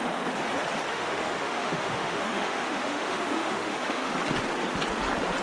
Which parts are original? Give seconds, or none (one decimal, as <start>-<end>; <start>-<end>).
0.0-0.9; 4.1-5.4